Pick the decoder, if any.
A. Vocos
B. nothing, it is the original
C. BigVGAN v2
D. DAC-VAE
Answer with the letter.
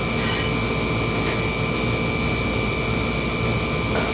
B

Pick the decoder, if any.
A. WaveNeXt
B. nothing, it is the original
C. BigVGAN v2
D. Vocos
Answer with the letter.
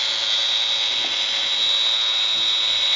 B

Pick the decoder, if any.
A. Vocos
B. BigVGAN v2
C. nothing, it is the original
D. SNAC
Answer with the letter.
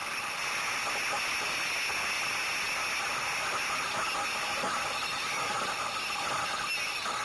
C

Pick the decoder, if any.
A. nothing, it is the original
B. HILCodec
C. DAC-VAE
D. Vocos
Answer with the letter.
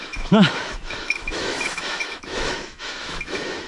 C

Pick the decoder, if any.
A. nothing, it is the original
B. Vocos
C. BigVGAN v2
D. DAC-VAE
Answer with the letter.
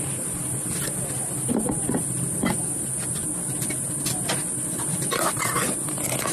A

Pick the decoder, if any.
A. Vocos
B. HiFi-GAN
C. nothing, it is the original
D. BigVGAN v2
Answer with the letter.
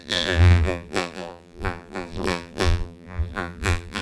D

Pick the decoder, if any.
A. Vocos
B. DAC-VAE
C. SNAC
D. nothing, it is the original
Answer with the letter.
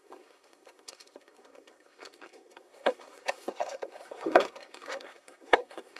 C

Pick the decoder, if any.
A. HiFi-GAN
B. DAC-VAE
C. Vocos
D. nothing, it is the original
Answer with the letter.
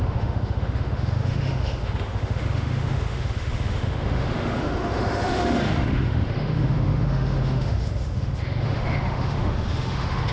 B